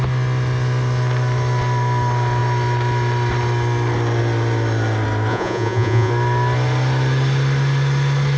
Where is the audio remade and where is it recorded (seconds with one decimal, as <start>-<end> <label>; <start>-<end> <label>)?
0.0-5.3 recorded; 5.3-6.1 remade; 6.1-8.4 recorded